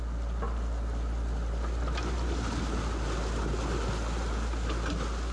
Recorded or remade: recorded